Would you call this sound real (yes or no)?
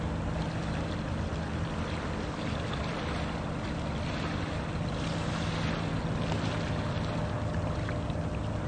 yes